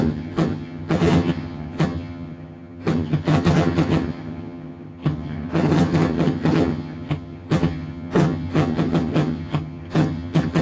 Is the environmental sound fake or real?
fake